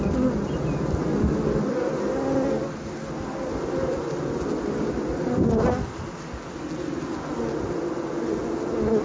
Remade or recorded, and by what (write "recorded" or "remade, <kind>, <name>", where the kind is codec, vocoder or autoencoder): recorded